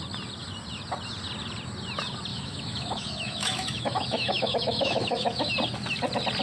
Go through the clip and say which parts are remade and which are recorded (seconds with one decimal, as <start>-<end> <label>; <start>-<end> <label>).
0.0-2.3 recorded; 2.3-5.5 remade; 5.5-6.4 recorded